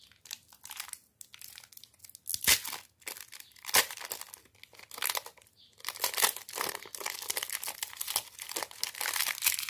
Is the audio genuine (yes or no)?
yes